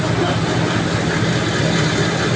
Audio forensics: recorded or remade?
recorded